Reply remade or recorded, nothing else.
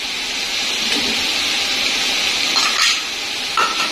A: recorded